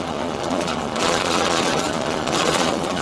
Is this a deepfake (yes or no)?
yes